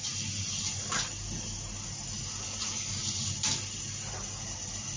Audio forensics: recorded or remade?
recorded